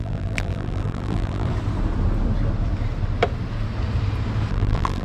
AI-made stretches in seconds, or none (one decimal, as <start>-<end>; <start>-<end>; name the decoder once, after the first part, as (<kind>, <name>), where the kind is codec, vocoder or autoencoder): 0.0-1.5 (vocoder, BigVGAN v2); 4.5-5.0